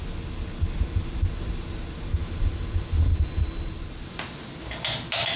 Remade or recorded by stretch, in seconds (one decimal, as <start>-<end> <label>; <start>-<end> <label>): 0.0-2.2 recorded; 2.2-3.7 remade; 3.7-5.4 recorded